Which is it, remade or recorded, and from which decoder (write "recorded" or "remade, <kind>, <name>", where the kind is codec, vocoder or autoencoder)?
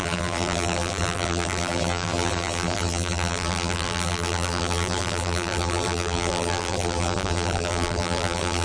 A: remade, vocoder, BigVGAN v2